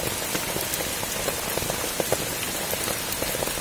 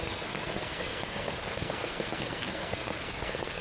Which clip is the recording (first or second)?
first